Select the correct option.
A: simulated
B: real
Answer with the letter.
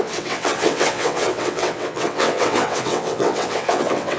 A